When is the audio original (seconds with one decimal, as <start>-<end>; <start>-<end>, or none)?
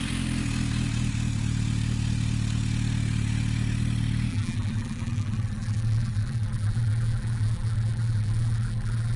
0.0-4.3